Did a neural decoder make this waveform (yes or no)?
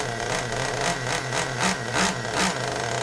no